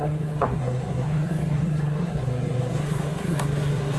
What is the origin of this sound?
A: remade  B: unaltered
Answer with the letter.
A